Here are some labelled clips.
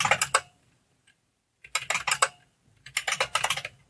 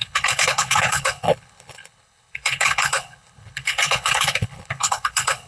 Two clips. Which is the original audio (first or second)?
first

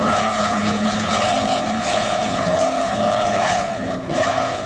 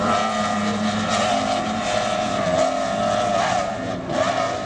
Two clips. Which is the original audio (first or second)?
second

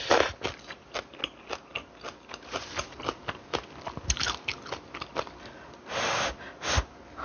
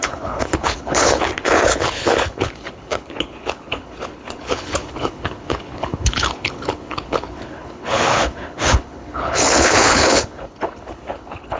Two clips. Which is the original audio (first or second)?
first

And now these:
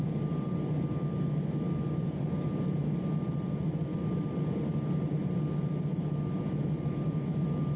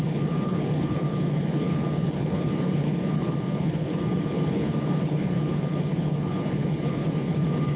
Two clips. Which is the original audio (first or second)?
first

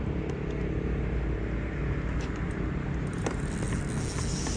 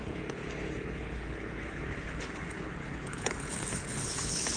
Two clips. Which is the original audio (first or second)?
first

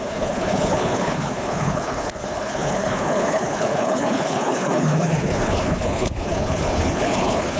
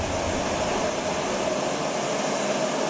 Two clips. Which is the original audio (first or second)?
second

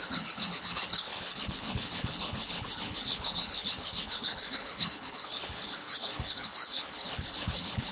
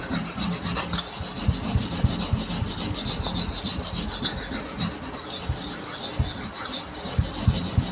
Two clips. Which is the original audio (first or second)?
second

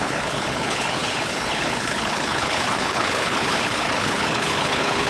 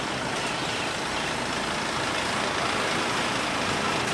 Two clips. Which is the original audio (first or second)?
second